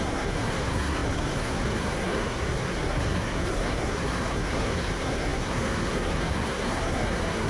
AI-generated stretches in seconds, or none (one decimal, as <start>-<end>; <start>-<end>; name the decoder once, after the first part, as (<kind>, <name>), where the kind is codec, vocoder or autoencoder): 0.0-7.5 (codec, SNAC)